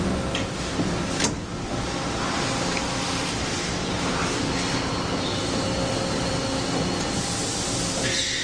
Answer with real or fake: real